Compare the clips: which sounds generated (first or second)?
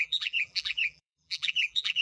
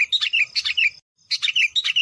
first